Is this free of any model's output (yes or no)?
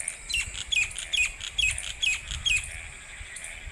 yes